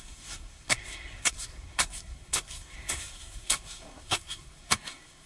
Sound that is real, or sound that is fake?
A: fake